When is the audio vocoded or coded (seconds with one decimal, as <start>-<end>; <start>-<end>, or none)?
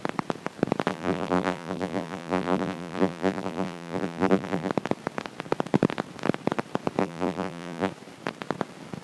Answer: 0.9-4.7; 7.0-7.9